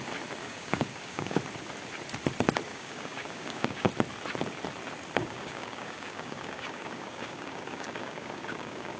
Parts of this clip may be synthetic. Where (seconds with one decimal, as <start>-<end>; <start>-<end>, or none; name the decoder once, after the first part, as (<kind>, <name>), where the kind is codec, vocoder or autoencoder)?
0.4-1.4 (codec, DAC); 2.7-3.9; 5.2-9.0